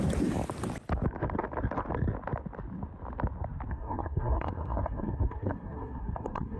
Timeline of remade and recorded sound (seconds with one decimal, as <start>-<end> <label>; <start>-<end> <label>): 0.0-3.7 recorded; 3.7-6.6 remade